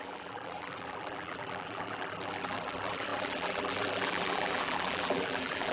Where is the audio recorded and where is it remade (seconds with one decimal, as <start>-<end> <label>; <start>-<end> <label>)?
0.0-5.7 remade